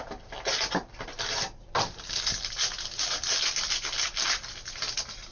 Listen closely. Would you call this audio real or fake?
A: real